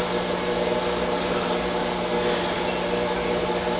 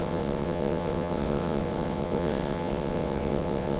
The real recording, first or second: first